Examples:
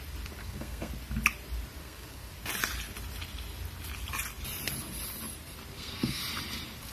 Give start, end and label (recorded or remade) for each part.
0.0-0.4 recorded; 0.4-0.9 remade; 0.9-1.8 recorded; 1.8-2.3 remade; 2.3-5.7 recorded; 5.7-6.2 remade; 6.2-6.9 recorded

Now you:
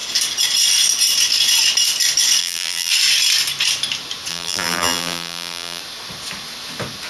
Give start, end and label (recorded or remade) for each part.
0.0-2.4 recorded; 2.4-2.9 remade; 2.9-4.3 recorded; 4.3-5.8 remade; 5.8-7.1 recorded